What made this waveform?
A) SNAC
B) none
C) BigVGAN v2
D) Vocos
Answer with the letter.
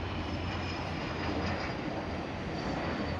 C